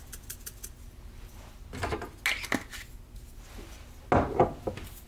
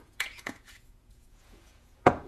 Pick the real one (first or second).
first